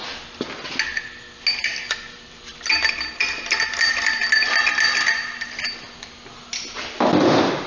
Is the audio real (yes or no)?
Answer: yes